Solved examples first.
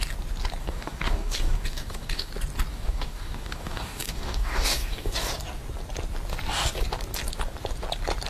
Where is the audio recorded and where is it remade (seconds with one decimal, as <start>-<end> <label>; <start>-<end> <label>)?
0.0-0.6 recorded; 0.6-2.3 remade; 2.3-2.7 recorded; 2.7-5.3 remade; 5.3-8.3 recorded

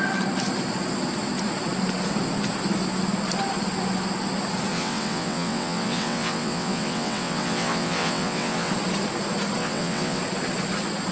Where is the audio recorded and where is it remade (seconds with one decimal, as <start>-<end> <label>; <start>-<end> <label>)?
0.0-4.7 recorded; 4.7-8.7 remade; 8.7-9.6 recorded; 9.6-10.2 remade; 10.2-11.1 recorded

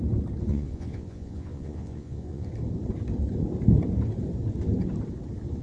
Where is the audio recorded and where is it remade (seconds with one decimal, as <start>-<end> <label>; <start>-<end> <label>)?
0.0-0.5 recorded; 0.5-2.5 remade; 2.5-5.6 recorded